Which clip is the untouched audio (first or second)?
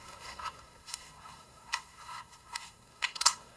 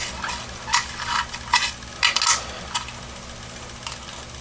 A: second